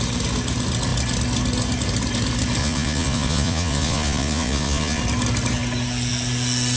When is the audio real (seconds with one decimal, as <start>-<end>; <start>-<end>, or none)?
0.0-2.6; 5.0-6.8

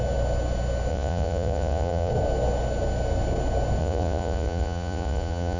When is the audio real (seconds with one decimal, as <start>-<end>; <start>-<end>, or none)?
0.0-0.9; 2.1-3.8

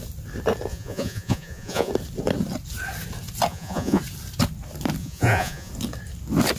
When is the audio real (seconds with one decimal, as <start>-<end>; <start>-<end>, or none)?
0.0-0.7; 1.9-3.5; 4.0-5.0; 5.7-6.6

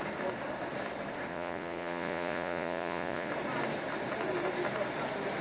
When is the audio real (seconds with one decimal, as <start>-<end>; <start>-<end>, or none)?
0.0-1.3; 3.3-5.4

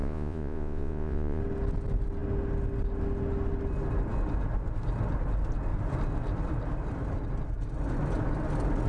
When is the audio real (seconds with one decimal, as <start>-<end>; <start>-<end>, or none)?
1.4-8.9

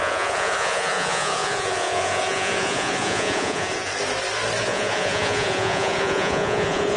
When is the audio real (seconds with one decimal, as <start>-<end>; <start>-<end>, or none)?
3.9-4.6

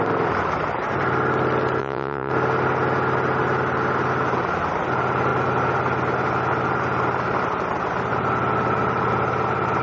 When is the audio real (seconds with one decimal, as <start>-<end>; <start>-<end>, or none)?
0.0-1.8; 2.3-9.8

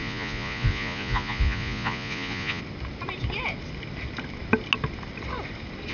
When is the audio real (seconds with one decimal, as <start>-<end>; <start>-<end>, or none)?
2.6-5.9